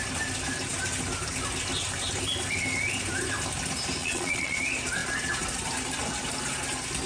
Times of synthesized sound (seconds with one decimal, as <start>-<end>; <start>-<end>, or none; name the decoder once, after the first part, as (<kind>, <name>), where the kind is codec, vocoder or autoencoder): 4.0-4.6 (vocoder, Vocos)